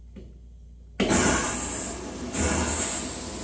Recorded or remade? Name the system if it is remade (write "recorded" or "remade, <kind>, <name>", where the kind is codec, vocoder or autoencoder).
recorded